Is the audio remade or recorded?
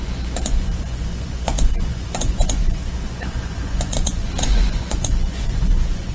remade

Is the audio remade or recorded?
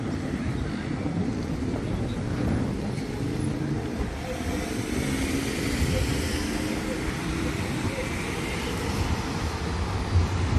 recorded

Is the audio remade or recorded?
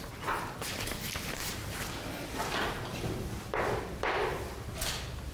recorded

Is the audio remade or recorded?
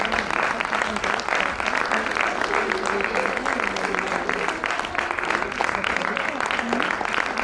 recorded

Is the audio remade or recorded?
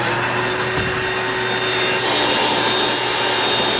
recorded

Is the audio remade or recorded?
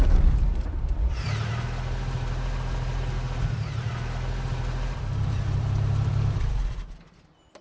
remade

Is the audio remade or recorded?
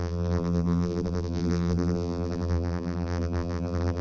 remade